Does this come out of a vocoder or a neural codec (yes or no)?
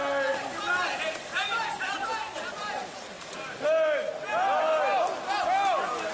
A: no